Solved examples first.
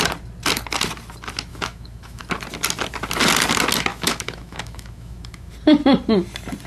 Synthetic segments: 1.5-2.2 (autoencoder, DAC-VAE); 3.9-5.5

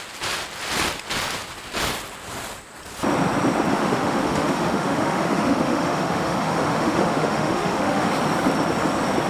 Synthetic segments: 3.7-8.1 (autoencoder, DAC-VAE)

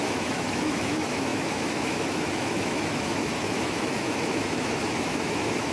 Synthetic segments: 0.0-5.7 (autoencoder, DAC-VAE)